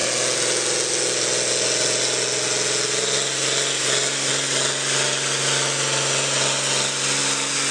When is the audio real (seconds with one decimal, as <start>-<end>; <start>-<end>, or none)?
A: 0.0-7.7